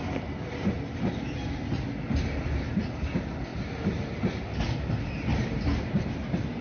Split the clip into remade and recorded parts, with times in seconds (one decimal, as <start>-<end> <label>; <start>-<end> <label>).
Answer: 0.0-6.6 recorded